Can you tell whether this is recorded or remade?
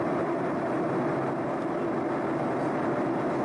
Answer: recorded